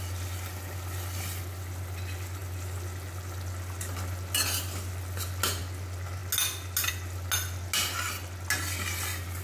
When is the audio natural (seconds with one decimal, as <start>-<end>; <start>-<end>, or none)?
0.0-9.4